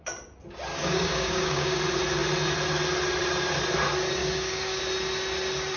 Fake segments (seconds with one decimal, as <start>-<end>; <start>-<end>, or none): 0.7-1.8; 4.2-4.8

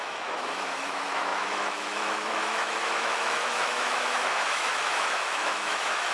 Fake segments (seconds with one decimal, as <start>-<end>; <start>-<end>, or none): 0.0-6.1

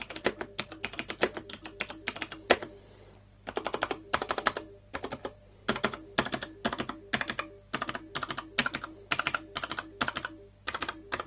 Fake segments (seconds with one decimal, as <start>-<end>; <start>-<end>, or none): none

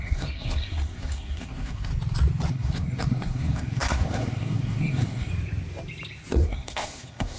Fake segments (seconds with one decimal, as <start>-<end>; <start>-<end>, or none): 0.0-1.9; 2.5-5.3; 6.3-7.4

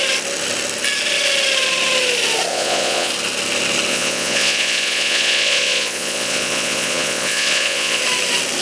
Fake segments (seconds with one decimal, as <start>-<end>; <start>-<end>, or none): 2.5-3.1; 3.9-8.0

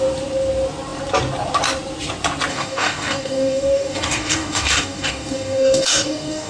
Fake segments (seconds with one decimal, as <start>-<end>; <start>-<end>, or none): 2.5-6.5

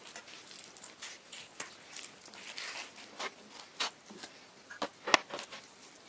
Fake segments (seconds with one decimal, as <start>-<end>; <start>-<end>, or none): none